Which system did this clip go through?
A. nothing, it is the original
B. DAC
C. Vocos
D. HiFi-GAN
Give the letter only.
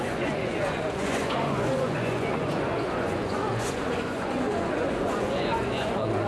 C